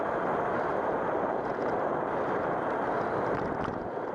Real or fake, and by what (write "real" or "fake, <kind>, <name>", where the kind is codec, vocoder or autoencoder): real